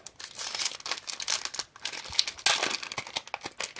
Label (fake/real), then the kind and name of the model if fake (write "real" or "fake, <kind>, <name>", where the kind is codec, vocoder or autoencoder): real